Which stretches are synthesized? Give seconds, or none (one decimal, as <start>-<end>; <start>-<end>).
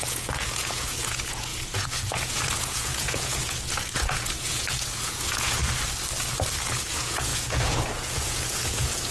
0.0-5.6; 6.7-9.1